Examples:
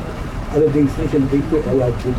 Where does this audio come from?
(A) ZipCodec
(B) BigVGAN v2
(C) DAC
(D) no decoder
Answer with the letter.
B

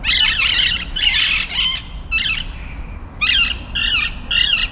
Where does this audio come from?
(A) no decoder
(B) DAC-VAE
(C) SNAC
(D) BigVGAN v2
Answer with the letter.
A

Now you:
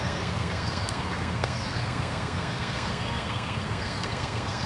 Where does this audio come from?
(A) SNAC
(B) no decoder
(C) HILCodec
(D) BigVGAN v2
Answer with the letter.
A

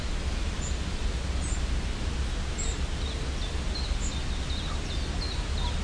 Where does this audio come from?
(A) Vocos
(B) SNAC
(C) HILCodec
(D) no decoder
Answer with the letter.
D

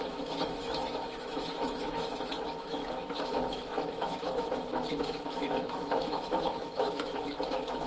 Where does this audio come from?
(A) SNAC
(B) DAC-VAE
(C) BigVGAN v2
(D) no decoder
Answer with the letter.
B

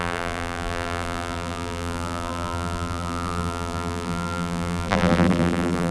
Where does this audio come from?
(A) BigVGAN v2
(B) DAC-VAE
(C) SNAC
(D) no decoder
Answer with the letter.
A